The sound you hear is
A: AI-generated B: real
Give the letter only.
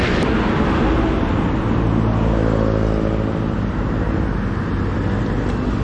B